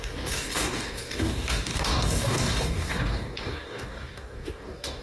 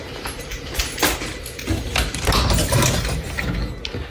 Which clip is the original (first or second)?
second